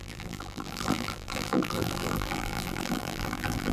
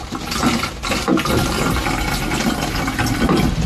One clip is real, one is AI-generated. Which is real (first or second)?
second